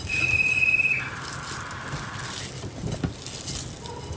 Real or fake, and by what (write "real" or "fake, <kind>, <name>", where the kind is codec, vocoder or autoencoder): real